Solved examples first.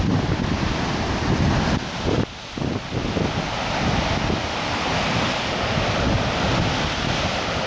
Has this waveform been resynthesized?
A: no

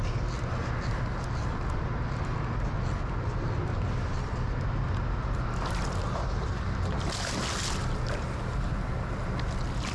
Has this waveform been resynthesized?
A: no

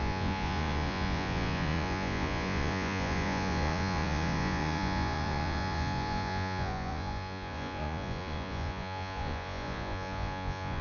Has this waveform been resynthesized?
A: yes